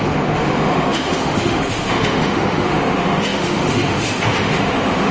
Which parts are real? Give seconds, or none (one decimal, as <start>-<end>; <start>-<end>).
none